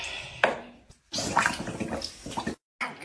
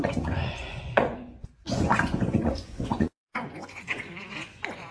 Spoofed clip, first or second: second